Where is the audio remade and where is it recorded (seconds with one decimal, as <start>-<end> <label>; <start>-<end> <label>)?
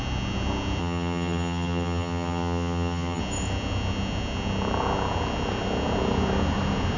0.0-0.8 recorded; 0.8-3.2 remade; 3.2-7.0 recorded